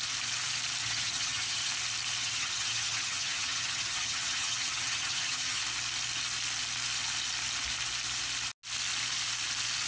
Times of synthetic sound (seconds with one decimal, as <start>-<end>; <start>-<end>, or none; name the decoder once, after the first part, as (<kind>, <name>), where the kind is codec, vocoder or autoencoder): 0.8-1.7 (vocoder, HiFi-GAN); 2.2-5.6